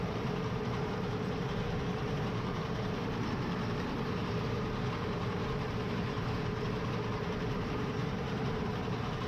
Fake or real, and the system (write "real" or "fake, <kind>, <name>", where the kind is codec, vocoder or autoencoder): fake, vocoder, BigVGAN v2